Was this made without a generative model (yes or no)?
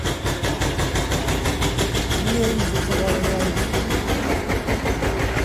yes